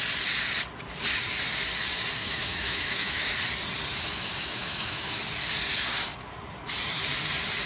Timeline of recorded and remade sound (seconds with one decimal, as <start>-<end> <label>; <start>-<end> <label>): 0.0-2.2 recorded; 2.2-3.3 remade; 3.3-3.9 recorded; 3.9-5.2 remade; 5.2-7.7 recorded